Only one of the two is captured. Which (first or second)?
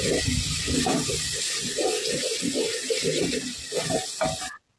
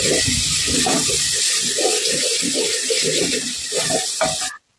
first